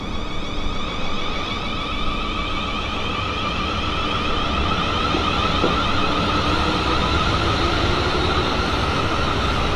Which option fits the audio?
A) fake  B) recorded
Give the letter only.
B